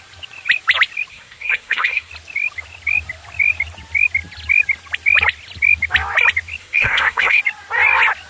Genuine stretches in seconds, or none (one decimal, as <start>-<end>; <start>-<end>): 0.0-1.1; 2.1-6.6; 7.4-8.3